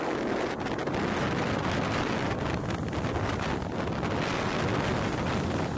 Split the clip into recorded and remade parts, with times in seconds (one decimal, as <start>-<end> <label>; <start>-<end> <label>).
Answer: 0.0-5.8 recorded